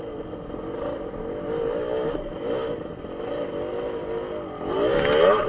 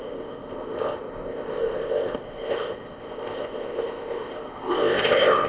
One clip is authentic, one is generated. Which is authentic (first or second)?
first